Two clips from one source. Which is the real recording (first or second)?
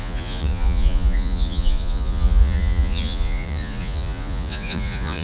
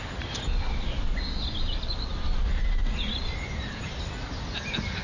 second